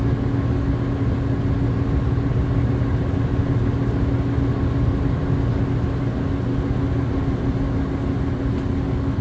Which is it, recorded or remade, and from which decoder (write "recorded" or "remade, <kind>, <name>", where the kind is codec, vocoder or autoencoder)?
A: recorded